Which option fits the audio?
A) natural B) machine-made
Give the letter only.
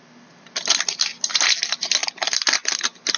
A